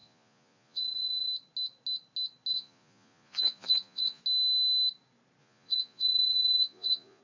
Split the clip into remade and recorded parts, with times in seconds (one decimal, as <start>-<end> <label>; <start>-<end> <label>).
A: 0.0-1.3 remade; 1.3-2.5 recorded; 2.5-4.2 remade; 4.2-5.4 recorded; 5.4-7.2 remade